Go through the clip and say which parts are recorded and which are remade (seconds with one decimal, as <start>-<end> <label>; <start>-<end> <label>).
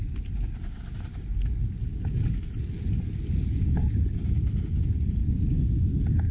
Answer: 0.0-1.8 recorded; 1.8-2.7 remade; 2.7-6.3 recorded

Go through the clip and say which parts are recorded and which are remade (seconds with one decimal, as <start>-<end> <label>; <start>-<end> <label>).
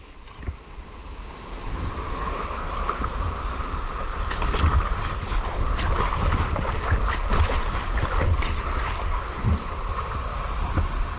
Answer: 0.0-2.1 recorded; 2.1-2.7 remade; 2.7-11.2 recorded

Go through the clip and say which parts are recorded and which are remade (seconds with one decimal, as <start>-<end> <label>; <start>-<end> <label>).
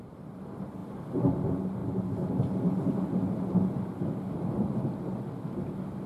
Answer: 0.0-0.8 recorded; 0.8-1.3 remade; 1.3-6.1 recorded